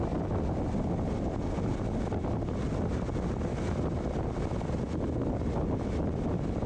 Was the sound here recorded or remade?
recorded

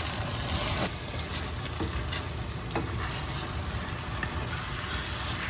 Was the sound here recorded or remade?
recorded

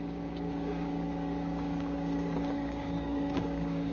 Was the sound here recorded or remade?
remade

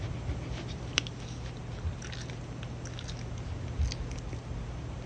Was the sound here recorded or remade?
recorded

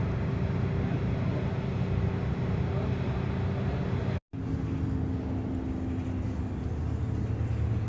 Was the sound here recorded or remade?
recorded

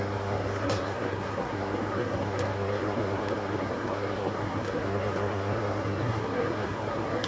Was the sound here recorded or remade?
remade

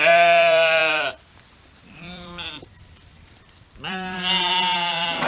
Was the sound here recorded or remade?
remade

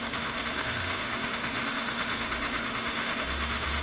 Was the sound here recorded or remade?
remade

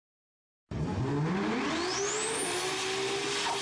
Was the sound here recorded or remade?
recorded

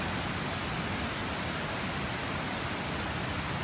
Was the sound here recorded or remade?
recorded